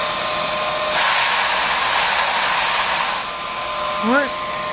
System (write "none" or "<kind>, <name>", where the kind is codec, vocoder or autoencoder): none